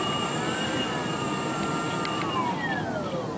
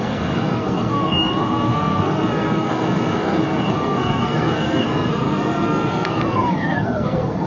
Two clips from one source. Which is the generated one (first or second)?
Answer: second